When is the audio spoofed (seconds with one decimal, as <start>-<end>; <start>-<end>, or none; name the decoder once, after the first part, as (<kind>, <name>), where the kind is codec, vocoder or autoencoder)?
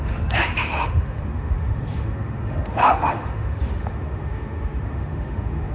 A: 0.0-5.7 (autoencoder, DAC-VAE)